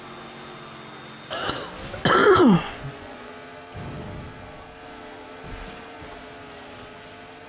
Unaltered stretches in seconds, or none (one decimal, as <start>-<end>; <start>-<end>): 0.0-2.2; 3.3-7.5